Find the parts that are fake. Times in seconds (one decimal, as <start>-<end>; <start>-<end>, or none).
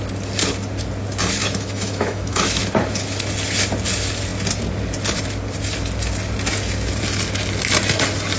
1.4-2.6